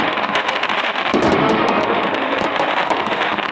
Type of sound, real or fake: fake